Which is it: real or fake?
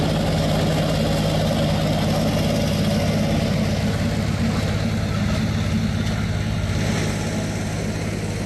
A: real